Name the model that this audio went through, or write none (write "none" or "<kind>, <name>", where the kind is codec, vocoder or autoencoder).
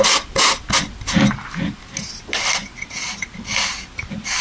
none